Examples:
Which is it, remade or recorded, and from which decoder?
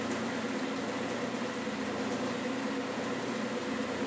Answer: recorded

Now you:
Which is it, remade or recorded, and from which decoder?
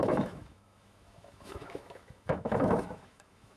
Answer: remade, autoencoder, DAC-VAE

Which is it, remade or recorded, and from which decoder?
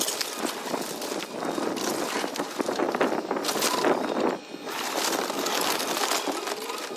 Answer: recorded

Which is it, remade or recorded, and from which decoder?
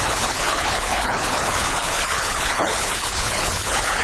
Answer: remade, codec, HILCodec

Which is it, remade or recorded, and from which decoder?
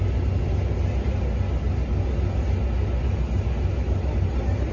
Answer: recorded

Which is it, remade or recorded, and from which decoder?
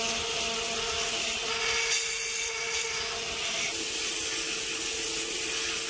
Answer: recorded